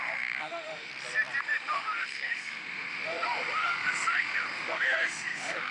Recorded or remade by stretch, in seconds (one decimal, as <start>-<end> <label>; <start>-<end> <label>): 0.0-0.9 remade; 0.9-1.4 recorded; 1.4-5.7 remade